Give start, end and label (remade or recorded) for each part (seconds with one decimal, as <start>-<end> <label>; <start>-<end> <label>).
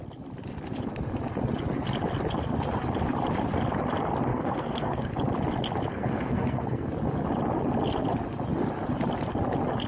0.0-4.3 recorded; 4.3-5.1 remade; 5.1-5.9 recorded; 5.9-6.9 remade; 6.9-9.9 recorded